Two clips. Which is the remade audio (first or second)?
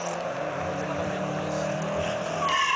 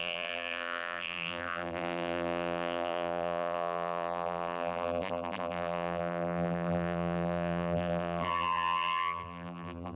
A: second